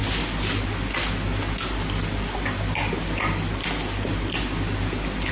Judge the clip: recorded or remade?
recorded